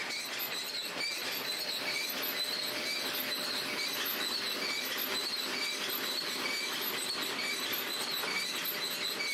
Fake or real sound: real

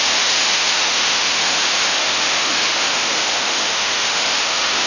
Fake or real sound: fake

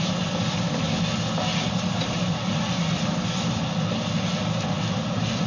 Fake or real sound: real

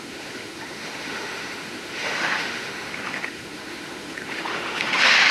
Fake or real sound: fake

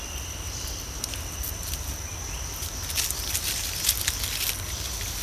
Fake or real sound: real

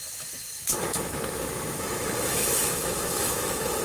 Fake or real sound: fake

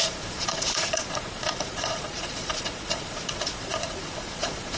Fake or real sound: fake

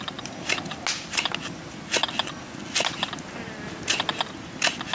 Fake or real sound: real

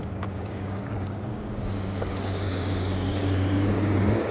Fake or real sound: fake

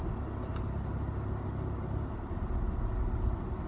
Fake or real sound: real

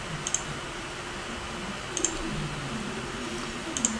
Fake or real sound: real